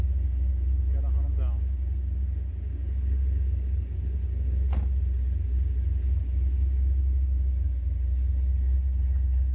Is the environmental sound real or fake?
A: real